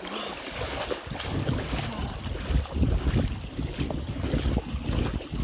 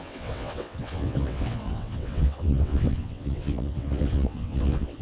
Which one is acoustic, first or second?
first